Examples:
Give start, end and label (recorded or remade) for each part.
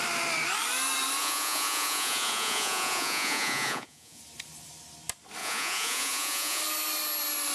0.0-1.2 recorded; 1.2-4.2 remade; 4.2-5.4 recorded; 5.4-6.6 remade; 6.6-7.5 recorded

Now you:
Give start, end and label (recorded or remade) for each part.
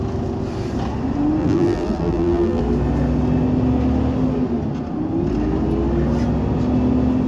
0.0-1.4 recorded; 1.4-2.6 remade; 2.6-7.3 recorded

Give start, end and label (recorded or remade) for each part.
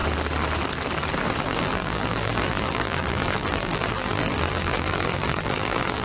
0.0-1.4 recorded; 1.4-6.0 remade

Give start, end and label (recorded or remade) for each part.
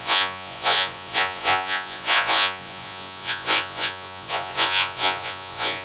0.0-5.8 remade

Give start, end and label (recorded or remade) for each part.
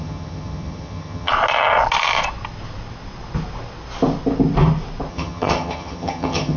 0.0-1.3 remade; 1.3-5.1 recorded; 5.1-6.6 remade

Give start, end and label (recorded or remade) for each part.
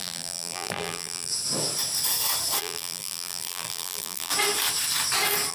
0.0-1.3 remade; 1.3-2.6 recorded; 2.6-4.3 remade; 4.3-5.5 recorded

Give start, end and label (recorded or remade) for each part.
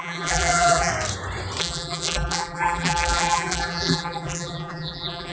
0.0-0.9 remade; 0.9-1.6 recorded; 1.6-5.3 remade